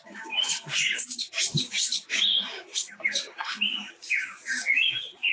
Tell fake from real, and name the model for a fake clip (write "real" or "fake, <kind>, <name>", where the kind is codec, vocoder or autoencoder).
fake, codec, DAC